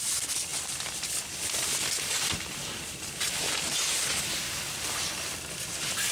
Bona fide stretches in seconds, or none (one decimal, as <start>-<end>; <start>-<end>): 0.0-6.1